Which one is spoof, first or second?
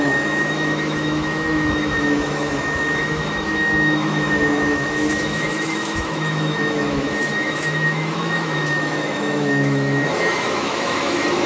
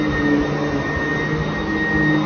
first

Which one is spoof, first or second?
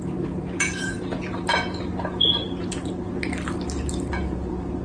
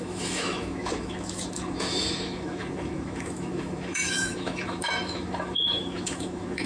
second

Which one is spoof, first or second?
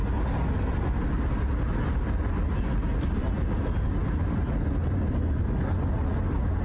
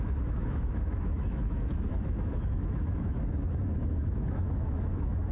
second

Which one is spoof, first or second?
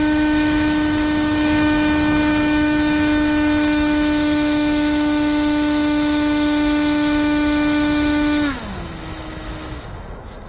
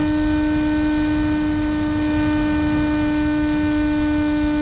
first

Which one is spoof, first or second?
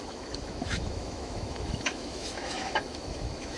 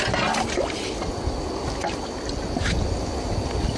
first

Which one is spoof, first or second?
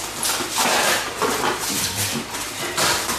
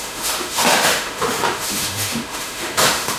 second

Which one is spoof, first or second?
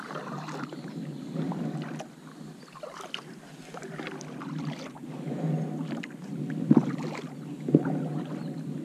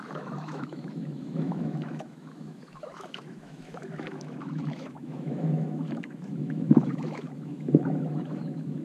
second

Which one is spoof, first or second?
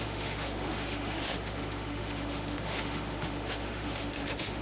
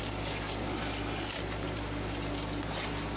first